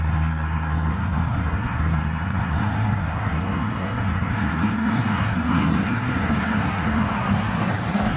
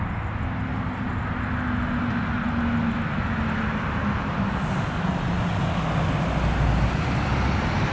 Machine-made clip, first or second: first